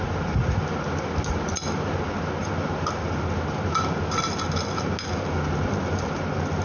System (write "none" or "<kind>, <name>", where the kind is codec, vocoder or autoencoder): none